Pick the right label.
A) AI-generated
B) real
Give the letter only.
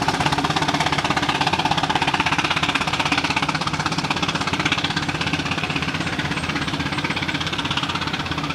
A